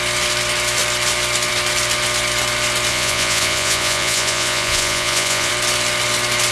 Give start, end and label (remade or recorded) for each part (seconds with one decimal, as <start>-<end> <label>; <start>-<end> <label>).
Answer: 0.0-2.9 recorded; 2.9-5.5 remade; 5.5-6.5 recorded